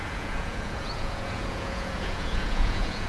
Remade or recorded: remade